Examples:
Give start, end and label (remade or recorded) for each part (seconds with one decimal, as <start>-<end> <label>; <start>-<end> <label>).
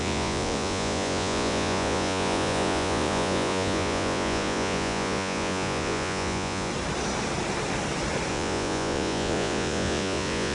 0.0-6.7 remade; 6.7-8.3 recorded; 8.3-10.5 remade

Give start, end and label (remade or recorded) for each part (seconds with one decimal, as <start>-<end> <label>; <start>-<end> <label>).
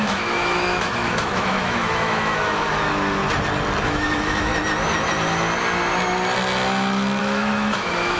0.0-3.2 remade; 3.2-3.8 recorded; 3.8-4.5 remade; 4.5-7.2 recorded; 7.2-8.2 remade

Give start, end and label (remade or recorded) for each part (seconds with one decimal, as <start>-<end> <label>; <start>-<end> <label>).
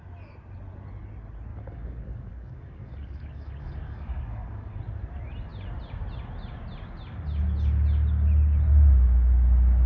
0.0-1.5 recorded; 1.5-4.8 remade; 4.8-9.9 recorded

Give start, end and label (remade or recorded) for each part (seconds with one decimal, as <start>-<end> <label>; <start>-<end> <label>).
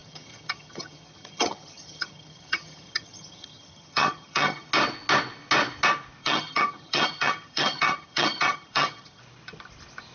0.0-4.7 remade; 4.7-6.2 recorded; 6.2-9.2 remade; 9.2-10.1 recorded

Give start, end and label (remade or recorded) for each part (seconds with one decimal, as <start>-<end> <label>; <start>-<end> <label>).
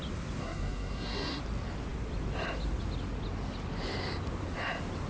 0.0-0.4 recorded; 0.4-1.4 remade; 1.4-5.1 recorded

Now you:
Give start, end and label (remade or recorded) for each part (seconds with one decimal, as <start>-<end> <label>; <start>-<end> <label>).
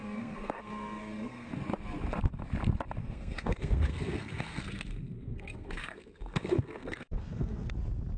0.0-1.5 remade; 1.5-3.0 recorded; 3.0-7.7 remade; 7.7-8.2 recorded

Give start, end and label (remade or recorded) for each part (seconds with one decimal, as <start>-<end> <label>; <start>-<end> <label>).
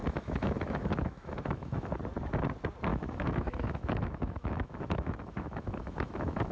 0.0-1.9 remade; 1.9-2.9 recorded; 2.9-6.5 remade